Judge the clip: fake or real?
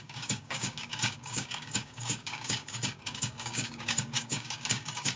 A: fake